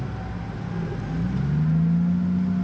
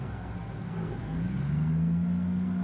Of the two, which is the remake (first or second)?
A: second